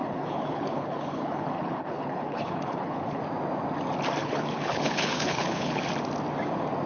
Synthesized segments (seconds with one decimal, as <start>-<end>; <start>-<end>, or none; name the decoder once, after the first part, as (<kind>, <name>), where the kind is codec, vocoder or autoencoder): 0.0-3.2 (codec, HILCodec); 4.2-5.8